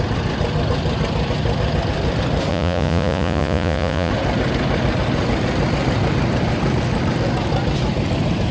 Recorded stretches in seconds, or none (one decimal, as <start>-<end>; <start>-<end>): 0.0-2.5; 4.1-8.5